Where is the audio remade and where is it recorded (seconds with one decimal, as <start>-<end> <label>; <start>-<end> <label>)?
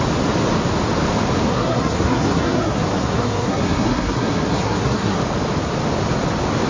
0.0-1.5 recorded; 1.5-5.2 remade; 5.2-6.7 recorded